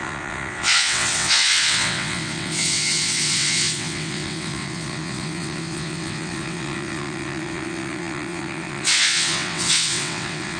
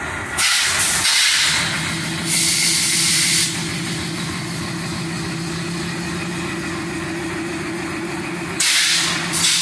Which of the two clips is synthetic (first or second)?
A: first